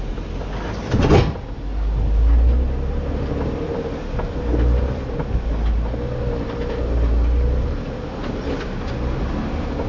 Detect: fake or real real